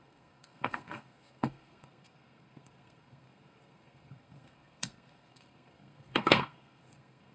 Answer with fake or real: fake